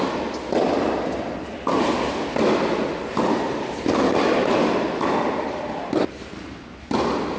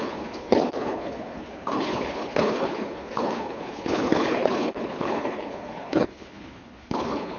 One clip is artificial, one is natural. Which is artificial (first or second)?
second